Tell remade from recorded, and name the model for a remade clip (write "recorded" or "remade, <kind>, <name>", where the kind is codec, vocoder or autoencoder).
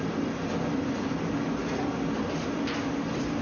recorded